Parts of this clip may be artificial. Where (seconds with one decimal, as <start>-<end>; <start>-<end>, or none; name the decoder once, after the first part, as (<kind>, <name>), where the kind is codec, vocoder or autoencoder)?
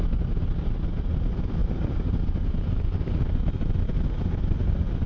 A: none